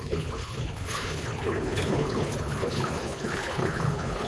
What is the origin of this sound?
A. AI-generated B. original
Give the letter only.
A